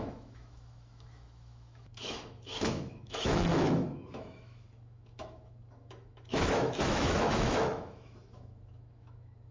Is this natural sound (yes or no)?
no